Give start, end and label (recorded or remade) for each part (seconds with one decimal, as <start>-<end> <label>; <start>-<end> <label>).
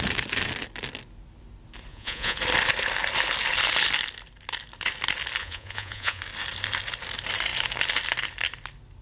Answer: 0.0-1.9 recorded; 1.9-2.4 remade; 2.4-5.4 recorded; 5.4-6.2 remade; 6.2-9.0 recorded